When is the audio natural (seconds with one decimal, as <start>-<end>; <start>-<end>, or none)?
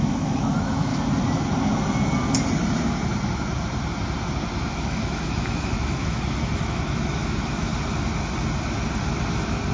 0.9-4.7; 7.7-9.7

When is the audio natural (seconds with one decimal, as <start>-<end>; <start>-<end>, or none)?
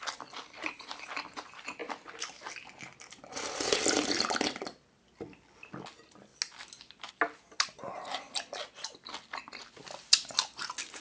0.0-11.0